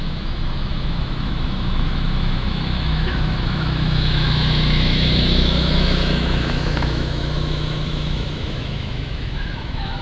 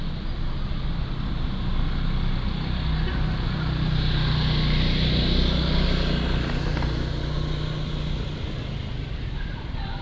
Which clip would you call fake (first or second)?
first